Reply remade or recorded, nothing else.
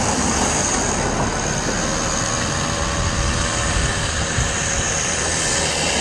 recorded